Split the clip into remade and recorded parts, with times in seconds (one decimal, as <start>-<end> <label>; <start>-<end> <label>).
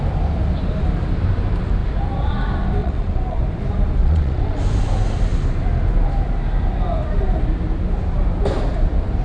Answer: 0.0-2.8 recorded; 2.8-3.4 remade; 3.4-4.0 recorded; 4.0-4.6 remade; 4.6-9.2 recorded